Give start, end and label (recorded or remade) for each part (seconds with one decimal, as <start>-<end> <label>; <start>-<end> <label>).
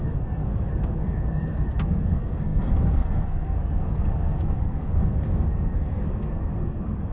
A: 0.0-7.1 remade